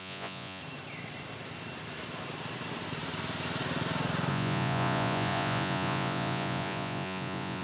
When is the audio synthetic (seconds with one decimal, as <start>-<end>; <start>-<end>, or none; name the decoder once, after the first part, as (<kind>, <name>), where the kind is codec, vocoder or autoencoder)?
0.0-0.6 (vocoder, Vocos); 4.3-7.6